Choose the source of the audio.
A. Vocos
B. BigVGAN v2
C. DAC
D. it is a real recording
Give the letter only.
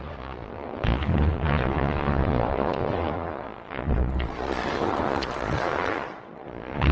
A